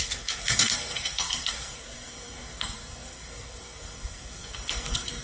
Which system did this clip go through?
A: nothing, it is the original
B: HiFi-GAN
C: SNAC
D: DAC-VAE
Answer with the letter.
C